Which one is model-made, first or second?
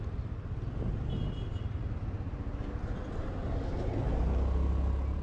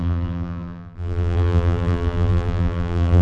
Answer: second